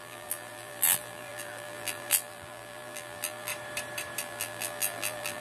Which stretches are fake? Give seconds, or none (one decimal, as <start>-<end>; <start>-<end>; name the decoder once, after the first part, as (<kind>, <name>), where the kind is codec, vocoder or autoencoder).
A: 0.0-3.5 (vocoder, BigVGAN v2); 4.2-5.4